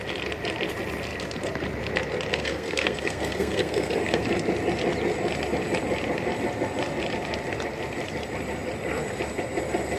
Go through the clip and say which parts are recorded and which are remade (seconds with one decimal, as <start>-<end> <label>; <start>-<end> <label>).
0.0-2.3 recorded; 2.3-4.2 remade; 4.2-10.0 recorded